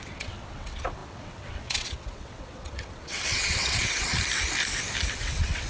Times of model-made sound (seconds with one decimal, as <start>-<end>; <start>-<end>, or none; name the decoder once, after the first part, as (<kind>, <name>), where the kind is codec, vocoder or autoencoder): 0.0-4.1 (vocoder, WaveNeXt); 5.1-5.7